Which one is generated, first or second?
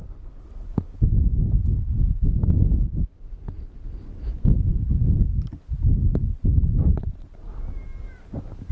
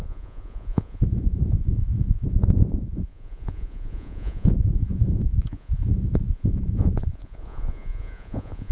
second